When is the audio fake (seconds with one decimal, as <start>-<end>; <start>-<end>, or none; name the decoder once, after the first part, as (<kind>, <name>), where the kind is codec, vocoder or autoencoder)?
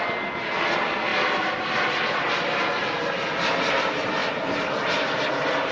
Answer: none